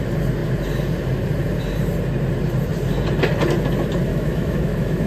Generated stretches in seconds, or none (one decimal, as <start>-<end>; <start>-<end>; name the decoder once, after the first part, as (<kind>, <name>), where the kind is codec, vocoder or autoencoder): 4.1-5.1 (autoencoder, DAC-VAE)